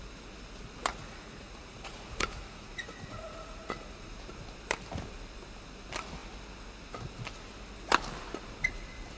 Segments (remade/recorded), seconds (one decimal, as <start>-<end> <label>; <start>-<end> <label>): 0.0-0.9 recorded; 0.9-4.1 remade; 4.1-9.2 recorded